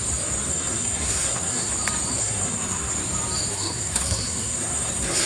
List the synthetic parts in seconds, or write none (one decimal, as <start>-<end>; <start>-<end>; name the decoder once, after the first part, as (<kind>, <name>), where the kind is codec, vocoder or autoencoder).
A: 0.5-1.7 (codec, SNAC); 2.2-2.9; 3.5-5.3